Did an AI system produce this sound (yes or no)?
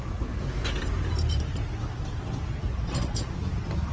no